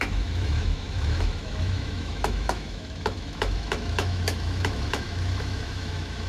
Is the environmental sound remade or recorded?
remade